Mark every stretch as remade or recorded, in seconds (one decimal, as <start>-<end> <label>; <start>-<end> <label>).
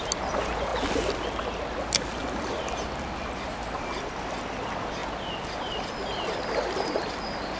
0.0-7.6 recorded